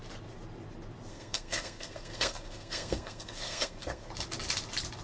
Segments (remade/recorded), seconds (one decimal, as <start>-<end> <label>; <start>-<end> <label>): 0.0-1.1 recorded; 1.1-4.1 remade; 4.1-5.0 recorded

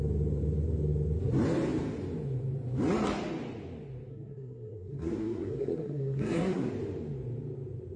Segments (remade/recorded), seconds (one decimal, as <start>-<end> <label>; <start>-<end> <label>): 0.0-4.1 recorded; 4.1-6.7 remade; 6.7-8.0 recorded

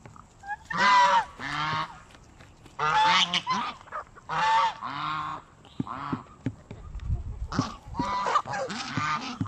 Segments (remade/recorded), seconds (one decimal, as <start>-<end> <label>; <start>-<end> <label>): 0.0-9.5 recorded

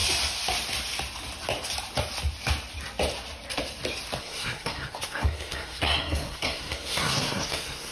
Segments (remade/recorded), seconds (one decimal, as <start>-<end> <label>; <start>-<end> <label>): 0.0-4.2 recorded; 4.2-7.9 remade